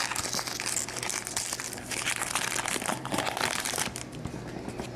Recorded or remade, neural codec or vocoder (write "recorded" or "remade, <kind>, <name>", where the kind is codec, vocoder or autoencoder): recorded